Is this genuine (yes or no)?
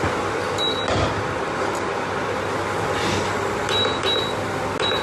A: yes